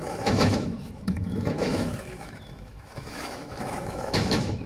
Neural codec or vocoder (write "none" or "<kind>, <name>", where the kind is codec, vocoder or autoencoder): autoencoder, DAC-VAE